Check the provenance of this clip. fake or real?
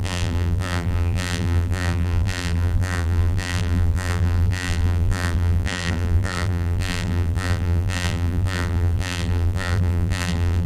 fake